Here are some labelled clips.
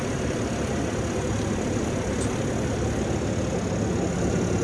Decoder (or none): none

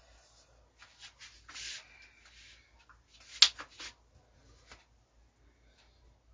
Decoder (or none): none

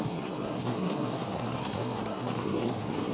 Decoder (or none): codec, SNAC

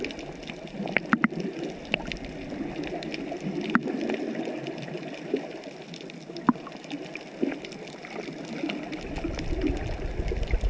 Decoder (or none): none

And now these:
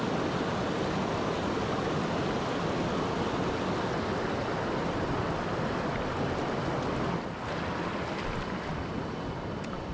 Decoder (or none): none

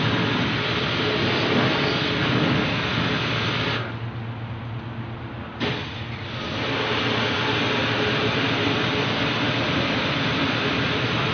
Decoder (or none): none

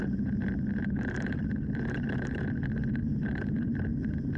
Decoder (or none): vocoder, BigVGAN v2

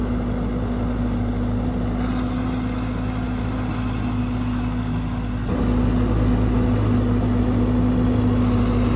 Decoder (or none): none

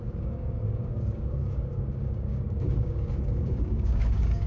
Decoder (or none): codec, DAC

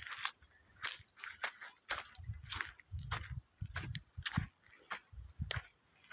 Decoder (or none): none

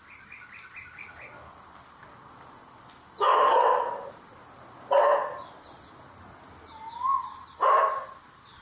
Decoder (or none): none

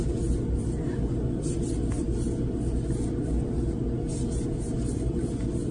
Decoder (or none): none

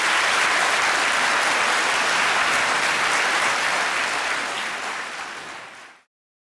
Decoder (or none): none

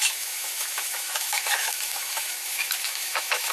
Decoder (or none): autoencoder, DAC-VAE